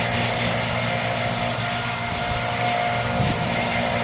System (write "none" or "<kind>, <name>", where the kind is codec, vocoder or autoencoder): none